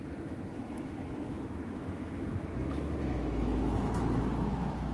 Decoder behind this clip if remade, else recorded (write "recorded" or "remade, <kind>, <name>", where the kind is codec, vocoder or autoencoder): remade, autoencoder, DAC-VAE